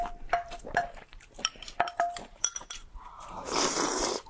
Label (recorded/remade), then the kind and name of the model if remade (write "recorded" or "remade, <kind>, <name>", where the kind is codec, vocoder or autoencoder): remade, vocoder, BigVGAN v2